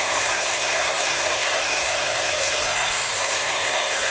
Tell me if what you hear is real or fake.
fake